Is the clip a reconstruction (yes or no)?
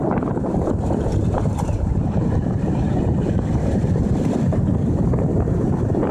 yes